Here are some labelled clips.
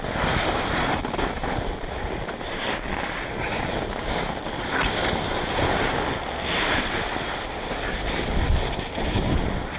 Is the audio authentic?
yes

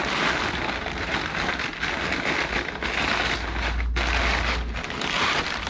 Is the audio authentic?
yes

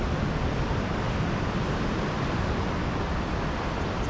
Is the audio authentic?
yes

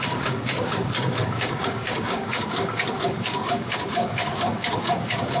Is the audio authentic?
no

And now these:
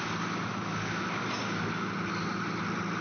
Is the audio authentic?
yes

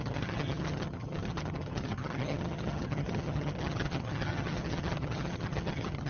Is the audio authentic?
no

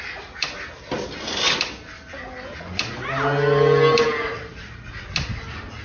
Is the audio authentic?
yes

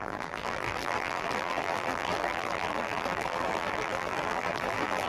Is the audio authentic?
no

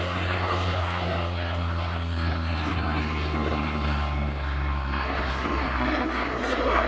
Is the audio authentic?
no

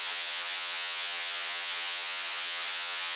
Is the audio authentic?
no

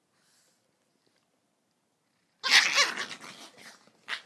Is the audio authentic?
yes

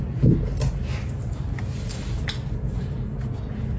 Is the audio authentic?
yes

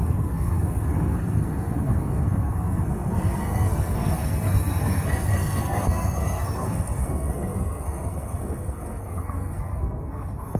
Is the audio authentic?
no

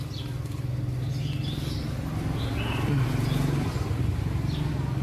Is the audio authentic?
yes